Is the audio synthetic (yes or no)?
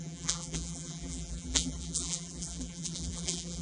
yes